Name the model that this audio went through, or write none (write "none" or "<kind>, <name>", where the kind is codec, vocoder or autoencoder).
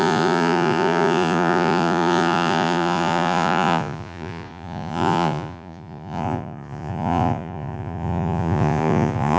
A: vocoder, Vocos